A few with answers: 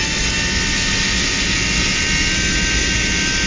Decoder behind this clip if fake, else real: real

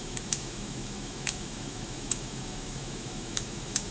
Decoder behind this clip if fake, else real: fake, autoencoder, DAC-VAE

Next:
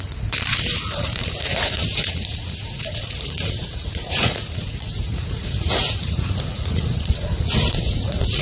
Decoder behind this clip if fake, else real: fake, vocoder, Vocos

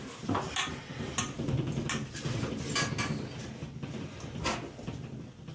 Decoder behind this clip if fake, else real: real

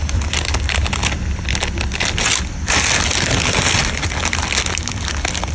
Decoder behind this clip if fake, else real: real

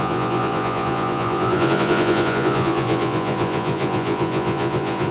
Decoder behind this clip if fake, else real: fake, vocoder, Vocos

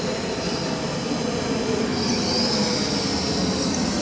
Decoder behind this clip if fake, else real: real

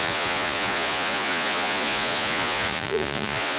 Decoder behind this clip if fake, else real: fake, vocoder, Vocos